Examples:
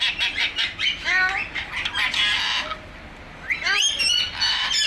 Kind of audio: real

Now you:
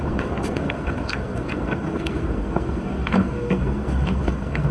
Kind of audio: fake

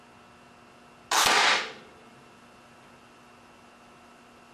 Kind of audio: real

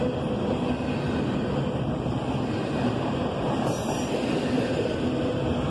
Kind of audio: real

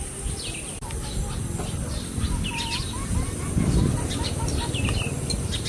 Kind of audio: real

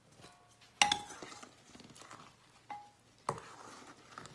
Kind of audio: real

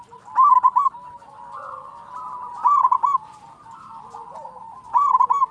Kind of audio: real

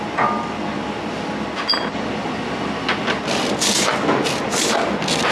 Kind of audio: real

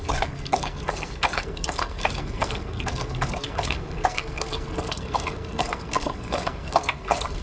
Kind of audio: fake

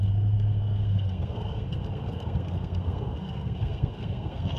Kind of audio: fake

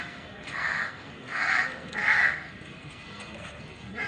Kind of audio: fake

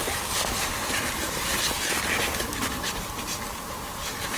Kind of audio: real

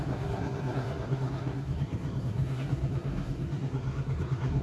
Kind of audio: fake